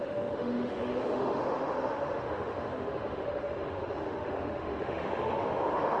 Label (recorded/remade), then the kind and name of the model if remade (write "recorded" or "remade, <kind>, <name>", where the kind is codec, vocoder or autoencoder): remade, autoencoder, DAC-VAE